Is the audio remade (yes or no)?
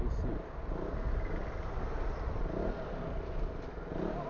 no